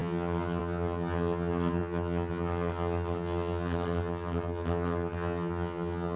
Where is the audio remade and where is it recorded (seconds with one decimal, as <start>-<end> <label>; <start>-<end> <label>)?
0.0-6.2 remade